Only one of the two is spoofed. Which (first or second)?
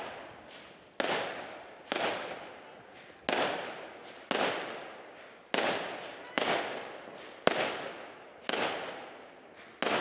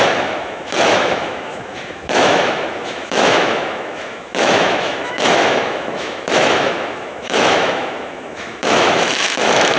second